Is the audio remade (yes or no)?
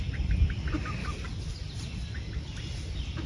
no